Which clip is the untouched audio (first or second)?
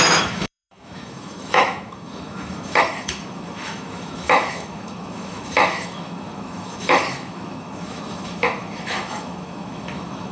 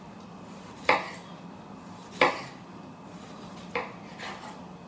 second